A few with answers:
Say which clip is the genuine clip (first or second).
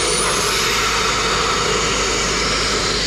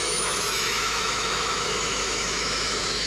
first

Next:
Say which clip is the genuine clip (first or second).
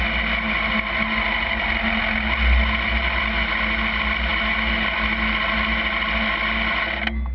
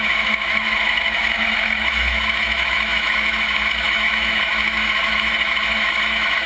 first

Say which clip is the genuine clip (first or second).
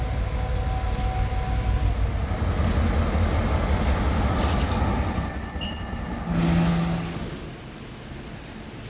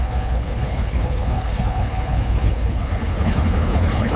first